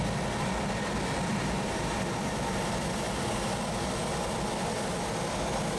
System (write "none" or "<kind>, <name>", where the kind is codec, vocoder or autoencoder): none